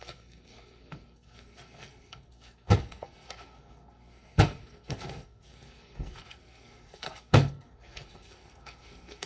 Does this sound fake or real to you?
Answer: fake